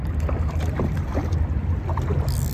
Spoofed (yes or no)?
no